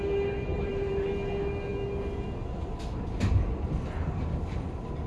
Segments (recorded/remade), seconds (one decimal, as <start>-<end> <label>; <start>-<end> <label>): 0.0-0.5 recorded; 0.5-1.1 remade; 1.1-5.1 recorded